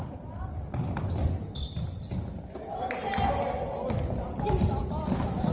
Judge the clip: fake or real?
real